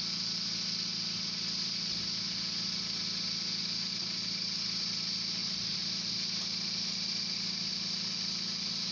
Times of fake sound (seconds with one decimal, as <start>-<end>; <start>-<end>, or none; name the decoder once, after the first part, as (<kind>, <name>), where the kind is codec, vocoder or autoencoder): none